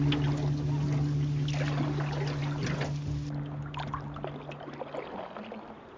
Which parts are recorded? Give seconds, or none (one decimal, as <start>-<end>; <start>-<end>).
0.0-6.0